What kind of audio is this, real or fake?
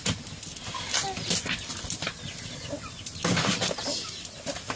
real